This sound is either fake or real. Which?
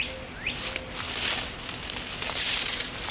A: real